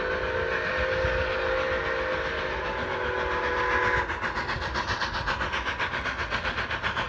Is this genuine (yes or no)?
yes